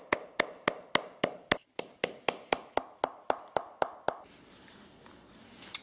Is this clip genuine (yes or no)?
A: yes